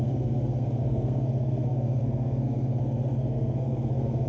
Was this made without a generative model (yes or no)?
no